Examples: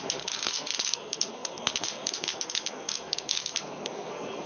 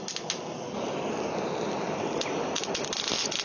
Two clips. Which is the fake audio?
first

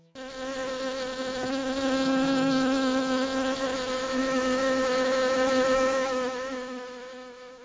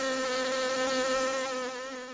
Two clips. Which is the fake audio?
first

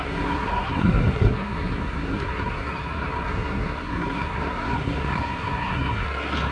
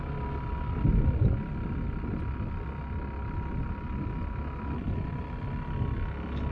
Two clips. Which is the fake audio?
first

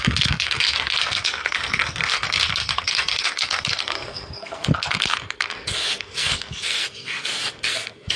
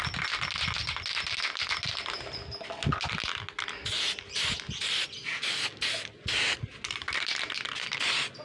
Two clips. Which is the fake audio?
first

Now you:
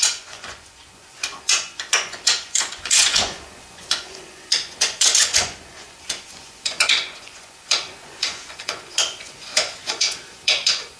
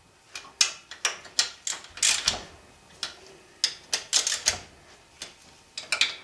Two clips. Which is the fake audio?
first